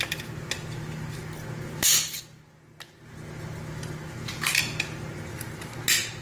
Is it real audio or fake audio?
real